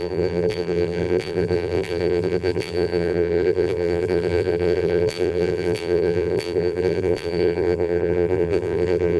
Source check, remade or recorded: remade